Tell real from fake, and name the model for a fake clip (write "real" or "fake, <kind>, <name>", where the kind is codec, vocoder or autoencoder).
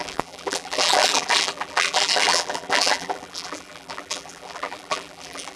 fake, vocoder, BigVGAN v2